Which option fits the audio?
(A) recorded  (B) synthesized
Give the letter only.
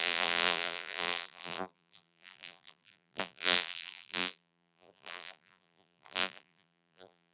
B